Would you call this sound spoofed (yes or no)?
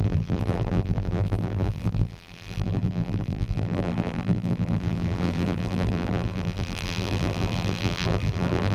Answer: yes